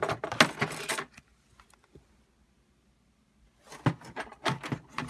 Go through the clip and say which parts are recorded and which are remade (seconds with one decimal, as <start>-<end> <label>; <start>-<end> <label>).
0.0-5.1 recorded